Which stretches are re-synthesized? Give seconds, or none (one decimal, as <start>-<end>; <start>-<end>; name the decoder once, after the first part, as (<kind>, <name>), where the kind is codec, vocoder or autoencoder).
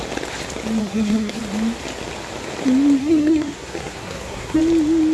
0.8-1.4 (codec, SNAC); 3.0-4.6